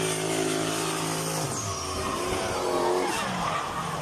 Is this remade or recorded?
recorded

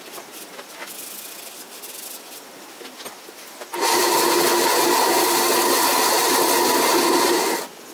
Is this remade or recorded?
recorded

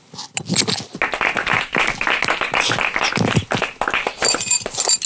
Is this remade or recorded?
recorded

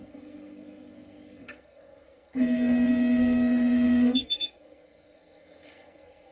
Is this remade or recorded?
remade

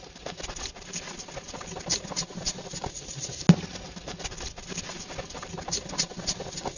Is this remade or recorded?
recorded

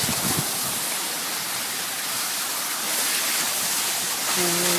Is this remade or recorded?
recorded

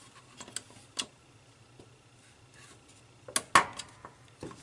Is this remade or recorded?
recorded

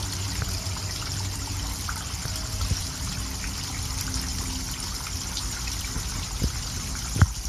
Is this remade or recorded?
recorded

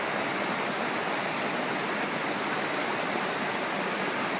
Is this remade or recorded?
recorded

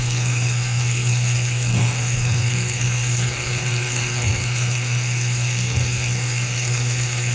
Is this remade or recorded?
remade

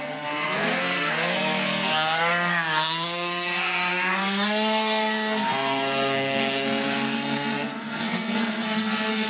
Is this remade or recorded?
remade